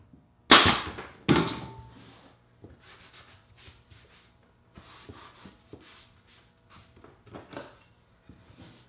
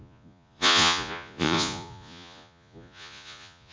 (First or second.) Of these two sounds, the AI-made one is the second